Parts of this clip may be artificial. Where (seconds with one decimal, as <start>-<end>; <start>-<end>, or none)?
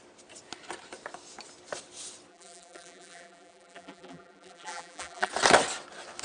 2.3-5.3